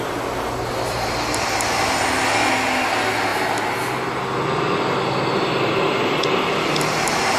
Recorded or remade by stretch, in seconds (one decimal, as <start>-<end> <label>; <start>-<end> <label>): 0.0-7.4 recorded